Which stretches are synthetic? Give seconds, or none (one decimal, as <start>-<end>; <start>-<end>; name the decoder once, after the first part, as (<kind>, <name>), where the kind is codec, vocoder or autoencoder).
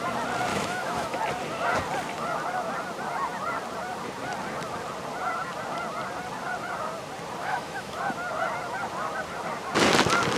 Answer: 0.5-1.2 (autoencoder, DAC-VAE); 7.4-8.0